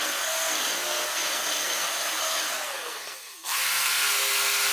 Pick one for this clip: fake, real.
fake